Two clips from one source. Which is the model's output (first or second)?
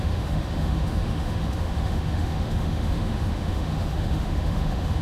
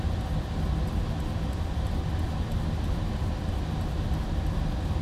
first